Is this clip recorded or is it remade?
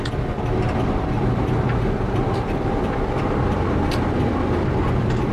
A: remade